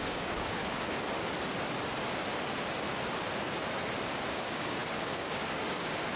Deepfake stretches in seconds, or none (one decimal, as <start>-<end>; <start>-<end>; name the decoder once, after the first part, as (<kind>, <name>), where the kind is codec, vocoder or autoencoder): 0.0-0.6 (codec, DAC); 4.3-6.2